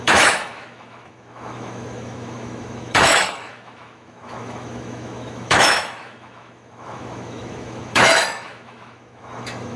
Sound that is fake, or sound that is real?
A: fake